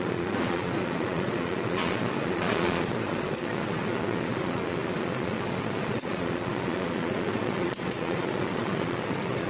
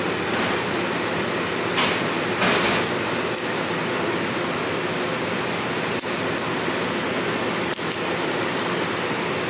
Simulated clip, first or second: first